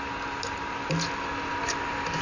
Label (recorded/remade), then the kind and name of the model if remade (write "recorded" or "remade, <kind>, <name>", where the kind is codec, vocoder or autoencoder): recorded